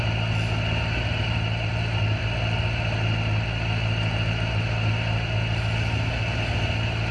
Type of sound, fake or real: real